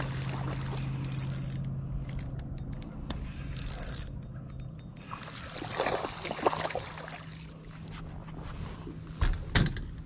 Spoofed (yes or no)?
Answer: no